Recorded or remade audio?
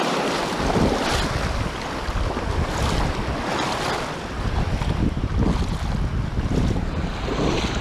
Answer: recorded